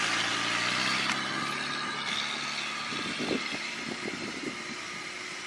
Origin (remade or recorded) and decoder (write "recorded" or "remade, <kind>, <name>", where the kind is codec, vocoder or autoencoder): recorded